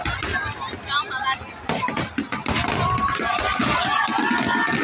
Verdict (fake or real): real